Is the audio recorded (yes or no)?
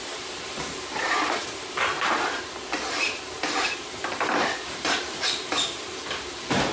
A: no